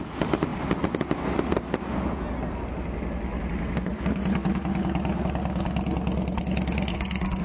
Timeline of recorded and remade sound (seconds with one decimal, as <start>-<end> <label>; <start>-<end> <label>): 0.0-6.9 recorded; 6.9-7.4 remade